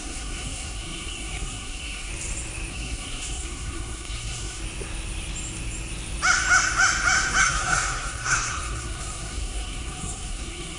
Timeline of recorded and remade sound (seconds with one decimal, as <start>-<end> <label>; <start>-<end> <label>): 0.0-2.1 remade; 2.1-2.7 recorded; 2.7-4.6 remade; 4.6-7.4 recorded; 7.4-10.8 remade